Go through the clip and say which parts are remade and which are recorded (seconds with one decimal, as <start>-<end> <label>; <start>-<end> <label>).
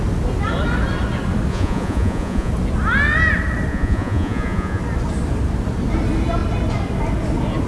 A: 0.0-1.5 recorded; 1.5-2.5 remade; 2.5-3.7 recorded; 3.7-4.8 remade; 4.8-7.7 recorded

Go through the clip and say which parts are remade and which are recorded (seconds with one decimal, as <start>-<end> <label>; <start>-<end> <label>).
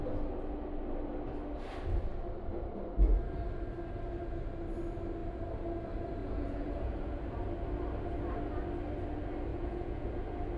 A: 0.0-6.2 recorded; 6.2-7.2 remade; 7.2-9.5 recorded; 9.5-10.0 remade; 10.0-10.6 recorded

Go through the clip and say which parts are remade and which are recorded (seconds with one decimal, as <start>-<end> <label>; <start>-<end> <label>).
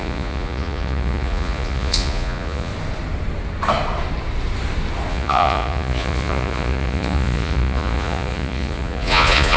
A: 0.0-2.7 remade; 2.7-5.1 recorded; 5.1-9.6 remade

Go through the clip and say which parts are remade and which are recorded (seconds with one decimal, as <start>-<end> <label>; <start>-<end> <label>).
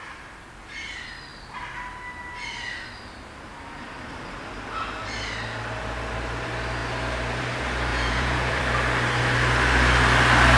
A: 0.0-7.9 recorded; 7.9-8.6 remade; 8.6-10.6 recorded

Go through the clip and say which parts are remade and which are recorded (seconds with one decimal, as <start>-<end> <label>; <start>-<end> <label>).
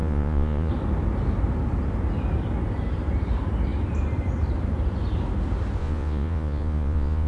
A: 0.0-0.7 remade; 0.7-5.8 recorded; 5.8-7.3 remade